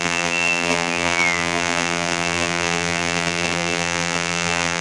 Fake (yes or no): yes